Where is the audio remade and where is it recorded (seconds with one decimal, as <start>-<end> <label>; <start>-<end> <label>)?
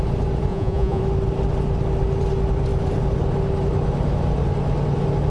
0.0-0.5 recorded; 0.5-1.0 remade; 1.0-5.3 recorded